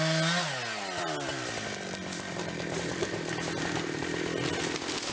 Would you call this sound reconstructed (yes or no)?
no